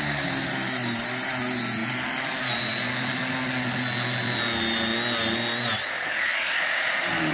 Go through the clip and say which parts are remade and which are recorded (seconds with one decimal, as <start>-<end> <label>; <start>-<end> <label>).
0.0-7.3 recorded